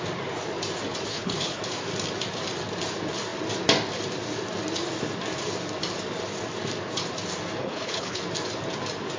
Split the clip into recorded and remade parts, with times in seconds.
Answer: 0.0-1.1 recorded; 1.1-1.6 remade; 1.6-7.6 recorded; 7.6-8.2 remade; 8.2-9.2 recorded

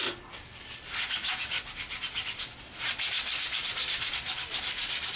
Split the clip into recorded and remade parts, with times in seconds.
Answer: 0.0-5.2 recorded

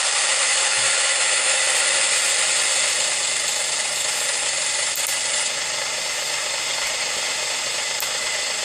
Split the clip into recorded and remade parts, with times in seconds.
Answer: 0.0-0.4 recorded; 0.4-1.6 remade; 1.6-8.6 recorded